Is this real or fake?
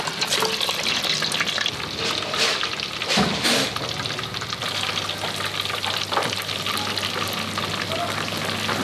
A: real